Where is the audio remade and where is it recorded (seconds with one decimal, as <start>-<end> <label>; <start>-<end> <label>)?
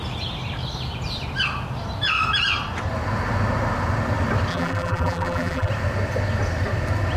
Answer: 0.0-4.5 recorded; 4.5-5.7 remade; 5.7-7.2 recorded